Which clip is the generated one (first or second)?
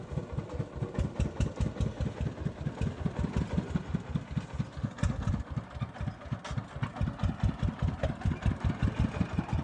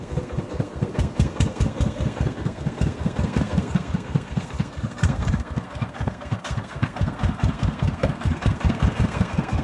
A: second